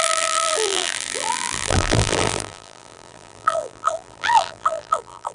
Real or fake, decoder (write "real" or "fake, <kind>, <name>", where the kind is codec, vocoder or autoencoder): fake, vocoder, BigVGAN v2